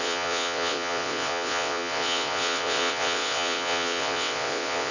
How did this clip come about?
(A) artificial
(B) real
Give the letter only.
A